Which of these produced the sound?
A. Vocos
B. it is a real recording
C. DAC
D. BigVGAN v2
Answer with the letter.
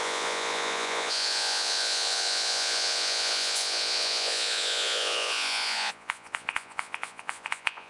A